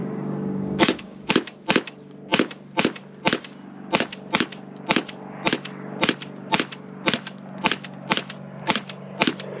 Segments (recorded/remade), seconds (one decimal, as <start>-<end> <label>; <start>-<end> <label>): 0.0-1.3 remade; 1.3-9.6 recorded